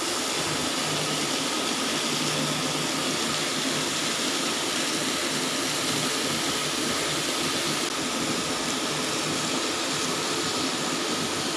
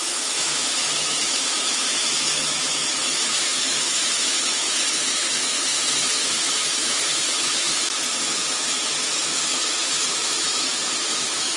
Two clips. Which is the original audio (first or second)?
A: first